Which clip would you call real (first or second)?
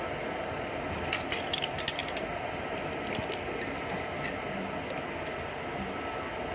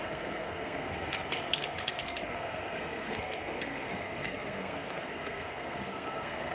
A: first